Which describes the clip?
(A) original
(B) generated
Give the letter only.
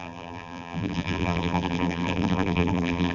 B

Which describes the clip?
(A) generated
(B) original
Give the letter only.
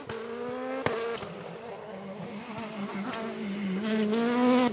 B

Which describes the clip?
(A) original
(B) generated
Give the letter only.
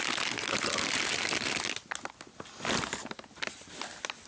A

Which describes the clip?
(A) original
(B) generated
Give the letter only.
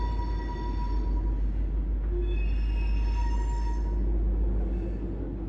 A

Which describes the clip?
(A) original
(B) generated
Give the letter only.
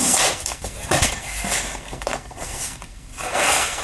B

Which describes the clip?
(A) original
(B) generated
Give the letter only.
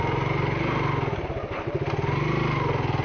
A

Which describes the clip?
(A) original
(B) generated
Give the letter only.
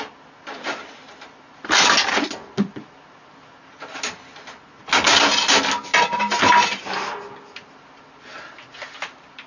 A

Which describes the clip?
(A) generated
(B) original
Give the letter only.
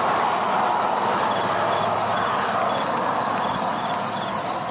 B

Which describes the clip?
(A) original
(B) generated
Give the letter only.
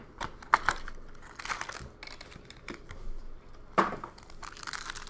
A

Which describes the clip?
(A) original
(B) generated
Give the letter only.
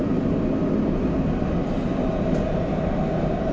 A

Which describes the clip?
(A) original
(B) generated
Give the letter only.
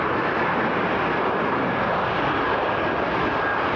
A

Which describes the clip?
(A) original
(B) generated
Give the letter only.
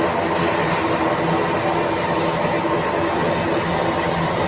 A